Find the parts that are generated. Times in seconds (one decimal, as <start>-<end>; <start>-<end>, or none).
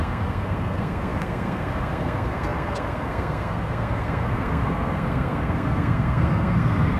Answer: 0.0-7.0